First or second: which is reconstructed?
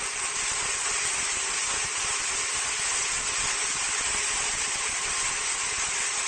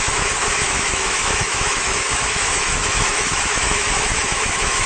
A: second